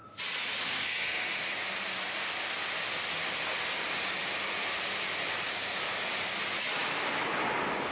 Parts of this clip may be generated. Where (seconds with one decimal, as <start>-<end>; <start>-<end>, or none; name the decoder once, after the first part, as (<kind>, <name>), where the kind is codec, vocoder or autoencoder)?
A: none

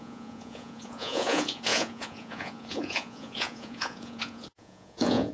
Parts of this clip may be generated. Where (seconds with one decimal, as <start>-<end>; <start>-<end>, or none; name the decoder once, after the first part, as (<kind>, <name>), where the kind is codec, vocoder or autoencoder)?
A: 0.0-5.3 (vocoder, Vocos)

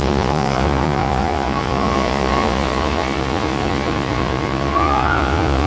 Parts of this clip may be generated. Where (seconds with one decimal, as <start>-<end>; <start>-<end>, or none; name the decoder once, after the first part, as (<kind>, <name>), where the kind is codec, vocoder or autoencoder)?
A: 0.0-5.7 (vocoder, Vocos)

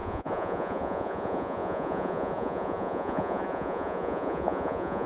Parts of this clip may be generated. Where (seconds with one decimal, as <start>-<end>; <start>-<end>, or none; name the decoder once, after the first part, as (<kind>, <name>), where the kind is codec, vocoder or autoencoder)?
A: 0.0-5.1 (vocoder, Vocos)

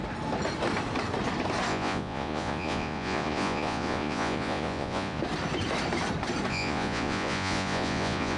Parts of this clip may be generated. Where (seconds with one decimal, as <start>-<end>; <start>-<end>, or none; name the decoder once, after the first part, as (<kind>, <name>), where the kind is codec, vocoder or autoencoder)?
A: 1.7-5.2 (vocoder, Vocos); 6.5-8.4

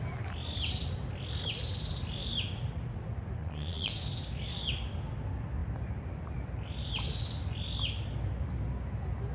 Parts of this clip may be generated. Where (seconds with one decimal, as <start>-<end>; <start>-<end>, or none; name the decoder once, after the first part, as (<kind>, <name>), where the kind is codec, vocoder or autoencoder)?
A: 3.4-3.9 (vocoder, Vocos)